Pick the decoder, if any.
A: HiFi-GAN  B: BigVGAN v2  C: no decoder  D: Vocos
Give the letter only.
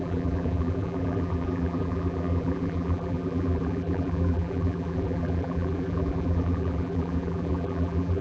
B